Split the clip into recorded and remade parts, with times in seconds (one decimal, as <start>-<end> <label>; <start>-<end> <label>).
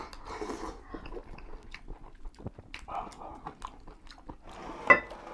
0.0-5.3 recorded